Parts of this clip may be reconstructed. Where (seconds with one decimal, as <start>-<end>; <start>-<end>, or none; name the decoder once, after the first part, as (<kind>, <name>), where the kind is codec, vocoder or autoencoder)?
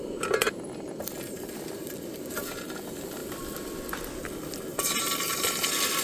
none